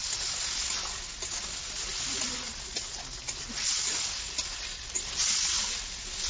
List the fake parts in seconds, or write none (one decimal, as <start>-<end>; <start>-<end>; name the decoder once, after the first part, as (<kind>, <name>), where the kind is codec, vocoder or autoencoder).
none